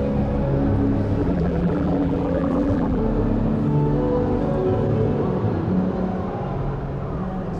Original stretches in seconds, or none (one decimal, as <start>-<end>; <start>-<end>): 0.0-1.2; 3.0-7.6